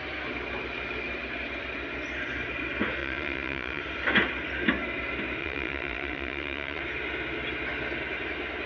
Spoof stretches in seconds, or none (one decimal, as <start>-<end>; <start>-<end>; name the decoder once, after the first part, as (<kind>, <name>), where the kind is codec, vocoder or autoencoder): 3.0-3.8 (vocoder, WaveNeXt); 5.4-6.8